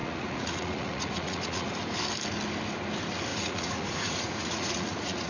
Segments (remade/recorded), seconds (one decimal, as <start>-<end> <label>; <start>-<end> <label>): 0.0-1.7 remade; 1.7-3.3 recorded; 3.3-5.3 remade